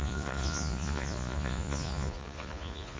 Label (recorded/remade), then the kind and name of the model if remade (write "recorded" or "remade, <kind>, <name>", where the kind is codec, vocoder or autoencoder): remade, vocoder, Vocos